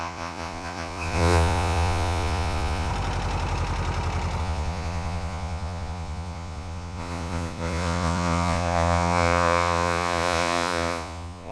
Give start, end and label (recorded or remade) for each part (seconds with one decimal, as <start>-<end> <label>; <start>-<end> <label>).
0.0-2.9 remade; 2.9-4.4 recorded; 4.4-11.5 remade